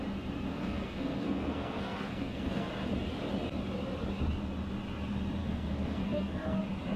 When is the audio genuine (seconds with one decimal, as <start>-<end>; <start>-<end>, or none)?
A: 0.0-0.5; 2.7-5.4; 6.6-7.0